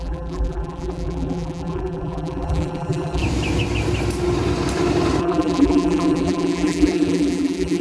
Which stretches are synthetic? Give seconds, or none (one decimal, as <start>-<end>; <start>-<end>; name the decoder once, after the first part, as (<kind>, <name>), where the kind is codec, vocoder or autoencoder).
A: 0.0-3.2 (vocoder, BigVGAN v2); 5.2-7.8